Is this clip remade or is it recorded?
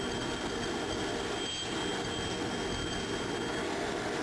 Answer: recorded